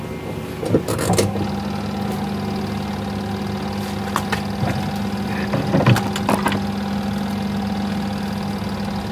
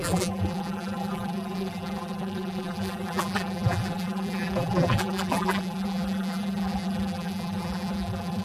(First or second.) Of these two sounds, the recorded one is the first